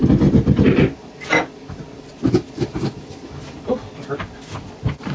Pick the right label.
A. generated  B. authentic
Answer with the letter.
B